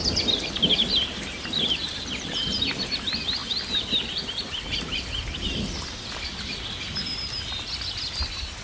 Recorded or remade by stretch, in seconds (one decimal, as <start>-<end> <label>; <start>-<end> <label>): 0.0-8.6 recorded